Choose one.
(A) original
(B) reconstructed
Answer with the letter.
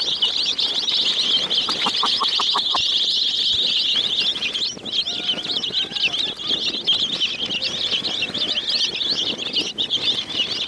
A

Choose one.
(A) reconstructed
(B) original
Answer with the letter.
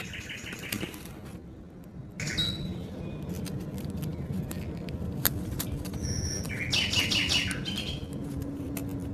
B